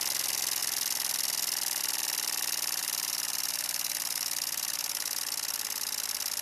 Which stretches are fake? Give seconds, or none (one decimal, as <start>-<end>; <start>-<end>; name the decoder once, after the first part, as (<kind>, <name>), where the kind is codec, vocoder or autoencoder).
2.8-5.2 (vocoder, BigVGAN v2)